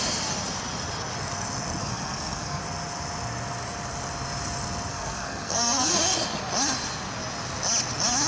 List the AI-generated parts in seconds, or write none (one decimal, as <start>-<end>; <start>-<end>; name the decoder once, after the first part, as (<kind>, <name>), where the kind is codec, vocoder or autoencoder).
1.8-2.6 (codec, SNAC); 4.9-5.9